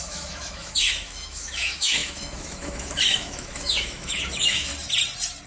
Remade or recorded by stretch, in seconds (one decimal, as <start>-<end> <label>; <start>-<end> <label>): 0.0-4.7 remade; 4.7-5.5 recorded